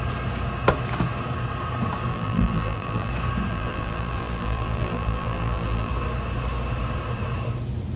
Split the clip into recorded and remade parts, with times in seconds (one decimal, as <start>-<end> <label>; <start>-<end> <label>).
0.0-2.1 recorded; 2.1-3.1 remade; 3.1-3.5 recorded; 3.5-5.9 remade; 5.9-8.0 recorded